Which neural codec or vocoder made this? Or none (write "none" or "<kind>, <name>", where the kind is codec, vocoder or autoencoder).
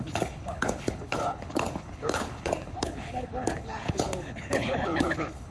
codec, HILCodec